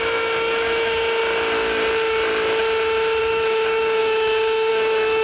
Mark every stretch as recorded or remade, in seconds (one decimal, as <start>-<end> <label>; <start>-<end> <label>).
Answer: 0.0-1.2 remade; 1.2-3.2 recorded; 3.2-5.2 remade